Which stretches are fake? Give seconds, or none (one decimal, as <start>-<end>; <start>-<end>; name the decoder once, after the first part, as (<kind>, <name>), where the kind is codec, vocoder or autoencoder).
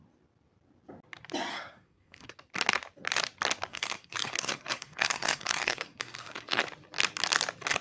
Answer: 1.5-2.4 (codec, SNAC); 3.7-6.6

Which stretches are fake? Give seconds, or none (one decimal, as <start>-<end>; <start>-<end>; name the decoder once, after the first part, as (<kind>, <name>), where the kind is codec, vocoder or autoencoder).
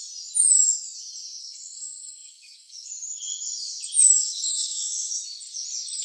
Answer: 1.4-2.9 (codec, SNAC); 4.5-5.1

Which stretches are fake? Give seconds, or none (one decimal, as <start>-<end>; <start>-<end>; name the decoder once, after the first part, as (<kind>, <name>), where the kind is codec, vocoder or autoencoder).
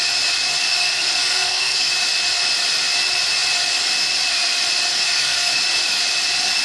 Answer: 0.8-1.9 (codec, SNAC); 4.9-5.5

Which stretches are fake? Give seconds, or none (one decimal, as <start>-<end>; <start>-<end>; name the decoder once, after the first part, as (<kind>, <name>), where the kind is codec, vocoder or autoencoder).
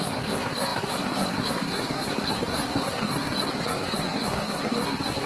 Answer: 0.0-5.3 (codec, SNAC)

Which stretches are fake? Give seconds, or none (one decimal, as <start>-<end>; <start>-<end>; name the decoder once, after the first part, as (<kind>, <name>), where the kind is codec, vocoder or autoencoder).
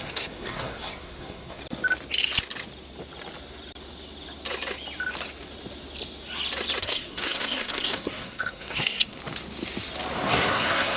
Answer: 0.0-1.6 (codec, SNAC); 6.8-9.2; 10.3-11.0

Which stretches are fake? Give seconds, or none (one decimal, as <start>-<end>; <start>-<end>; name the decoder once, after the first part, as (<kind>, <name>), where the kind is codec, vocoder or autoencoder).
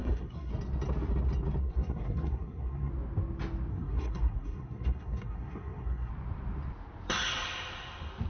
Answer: 0.0-0.5 (codec, SNAC); 1.6-2.9; 3.7-6.1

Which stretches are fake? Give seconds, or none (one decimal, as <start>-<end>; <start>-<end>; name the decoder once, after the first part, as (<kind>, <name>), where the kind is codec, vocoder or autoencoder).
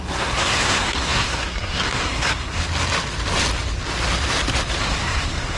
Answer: 0.0-2.6 (codec, SNAC); 4.8-5.6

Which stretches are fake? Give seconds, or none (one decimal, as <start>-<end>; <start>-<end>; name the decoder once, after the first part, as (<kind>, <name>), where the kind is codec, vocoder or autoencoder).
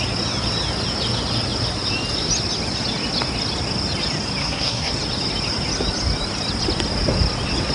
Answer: 4.4-4.9 (codec, SNAC)